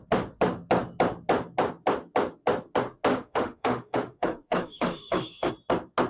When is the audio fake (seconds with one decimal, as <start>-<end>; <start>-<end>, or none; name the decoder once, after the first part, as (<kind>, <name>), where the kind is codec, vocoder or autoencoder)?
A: 3.1-5.5 (autoencoder, DAC-VAE)